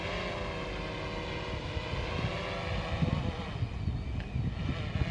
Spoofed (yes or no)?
no